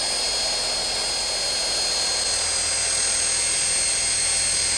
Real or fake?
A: real